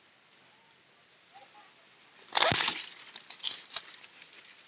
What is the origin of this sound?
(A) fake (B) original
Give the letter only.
B